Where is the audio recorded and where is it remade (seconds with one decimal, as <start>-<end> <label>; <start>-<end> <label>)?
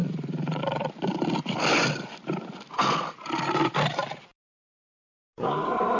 0.0-0.6 remade; 0.6-4.3 recorded; 4.3-6.0 remade